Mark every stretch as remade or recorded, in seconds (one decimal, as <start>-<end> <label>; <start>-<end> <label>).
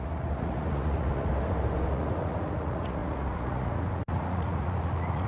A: 0.0-1.3 remade; 1.3-1.9 recorded; 1.9-5.3 remade